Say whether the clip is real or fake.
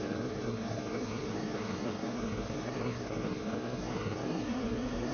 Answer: fake